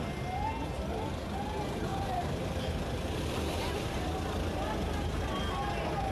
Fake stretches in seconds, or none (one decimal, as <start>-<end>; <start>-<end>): 1.9-4.0